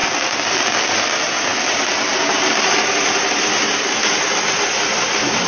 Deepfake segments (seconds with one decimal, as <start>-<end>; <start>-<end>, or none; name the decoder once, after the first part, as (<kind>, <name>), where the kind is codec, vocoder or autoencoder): none